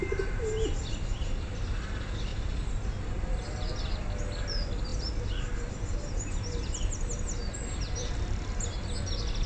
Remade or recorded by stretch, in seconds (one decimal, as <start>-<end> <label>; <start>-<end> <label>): 0.0-2.3 recorded; 2.3-4.0 remade; 4.0-8.0 recorded; 8.0-8.5 remade; 8.5-9.5 recorded

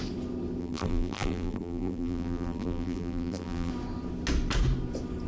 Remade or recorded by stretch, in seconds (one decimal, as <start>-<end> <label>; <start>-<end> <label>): 0.0-0.6 recorded; 0.6-3.7 remade; 3.7-5.3 recorded

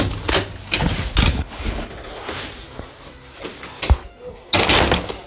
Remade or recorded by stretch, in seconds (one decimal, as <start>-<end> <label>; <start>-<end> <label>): 0.0-1.3 recorded; 1.3-1.9 remade; 1.9-5.3 recorded

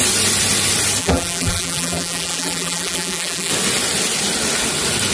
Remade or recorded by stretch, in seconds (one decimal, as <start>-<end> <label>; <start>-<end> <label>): 0.0-1.0 recorded; 1.0-3.5 remade; 3.5-5.1 recorded

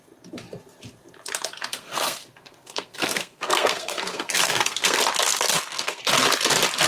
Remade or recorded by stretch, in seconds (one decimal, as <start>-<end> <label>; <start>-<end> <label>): 0.0-1.7 recorded; 1.7-5.0 remade; 5.0-5.5 recorded; 5.5-6.0 remade; 6.0-6.9 recorded